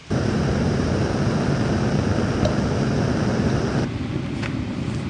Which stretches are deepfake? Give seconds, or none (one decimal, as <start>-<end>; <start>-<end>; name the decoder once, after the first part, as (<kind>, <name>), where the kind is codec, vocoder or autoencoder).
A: 0.0-0.9 (vocoder, BigVGAN v2)